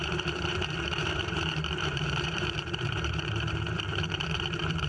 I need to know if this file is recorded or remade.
remade